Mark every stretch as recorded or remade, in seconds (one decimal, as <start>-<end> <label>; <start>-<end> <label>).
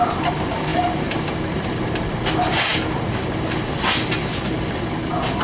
0.0-5.4 recorded